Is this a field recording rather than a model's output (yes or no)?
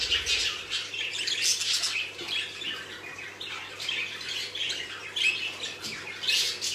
yes